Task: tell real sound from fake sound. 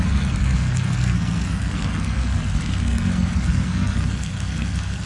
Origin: fake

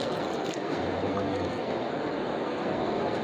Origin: fake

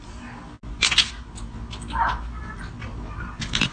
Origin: real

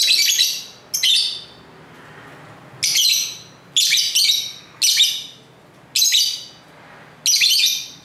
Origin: real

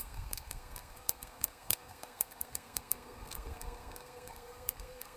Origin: fake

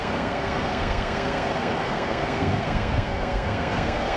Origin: fake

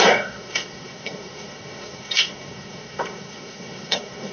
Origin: fake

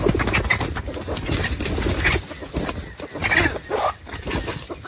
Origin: real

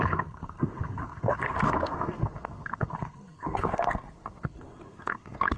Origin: fake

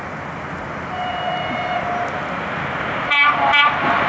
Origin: real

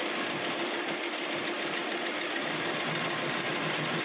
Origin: real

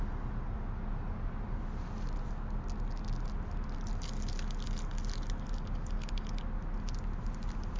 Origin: real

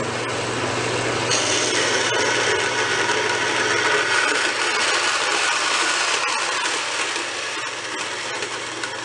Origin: real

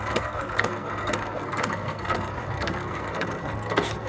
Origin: fake